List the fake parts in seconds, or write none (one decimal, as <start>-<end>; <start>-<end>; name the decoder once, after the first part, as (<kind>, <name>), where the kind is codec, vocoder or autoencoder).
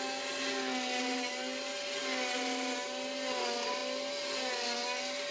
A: none